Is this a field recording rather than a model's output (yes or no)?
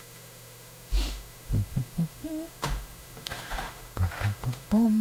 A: no